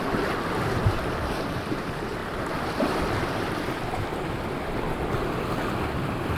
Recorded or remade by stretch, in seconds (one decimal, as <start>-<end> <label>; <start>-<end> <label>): 0.0-2.2 recorded; 2.2-3.9 remade; 3.9-6.4 recorded